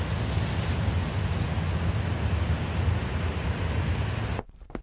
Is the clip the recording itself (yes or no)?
yes